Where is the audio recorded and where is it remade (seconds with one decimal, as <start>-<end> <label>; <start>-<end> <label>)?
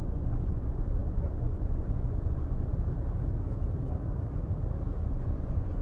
0.0-2.7 remade; 2.7-5.1 recorded; 5.1-5.8 remade